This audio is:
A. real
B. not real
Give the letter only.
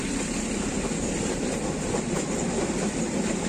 B